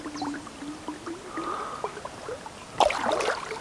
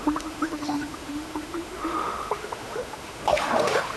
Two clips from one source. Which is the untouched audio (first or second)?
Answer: first